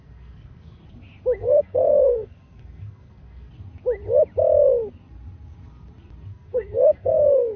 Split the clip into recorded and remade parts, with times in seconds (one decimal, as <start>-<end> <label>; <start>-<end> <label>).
0.0-0.8 remade; 0.8-1.4 recorded; 1.4-3.5 remade; 3.5-6.3 recorded; 6.3-7.6 remade